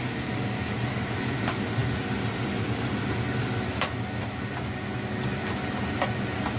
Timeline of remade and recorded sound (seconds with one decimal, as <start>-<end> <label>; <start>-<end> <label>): 0.0-6.6 recorded